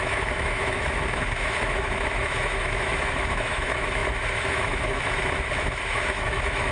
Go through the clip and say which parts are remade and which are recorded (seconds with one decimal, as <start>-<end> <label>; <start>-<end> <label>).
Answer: 0.0-6.7 remade